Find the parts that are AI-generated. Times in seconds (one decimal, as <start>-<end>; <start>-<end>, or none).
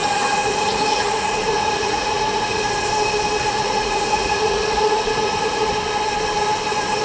0.0-2.7; 3.4-5.7